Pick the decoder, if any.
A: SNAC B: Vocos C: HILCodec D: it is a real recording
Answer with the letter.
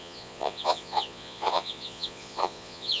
B